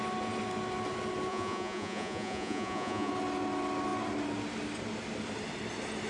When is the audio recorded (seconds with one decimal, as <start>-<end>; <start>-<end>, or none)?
0.0-1.3; 3.1-6.1